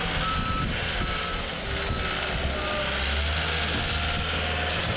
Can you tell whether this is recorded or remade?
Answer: recorded